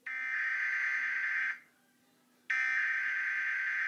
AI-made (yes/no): no